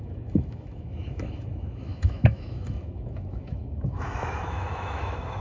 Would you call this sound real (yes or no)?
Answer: no